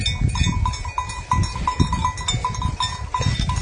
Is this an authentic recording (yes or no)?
yes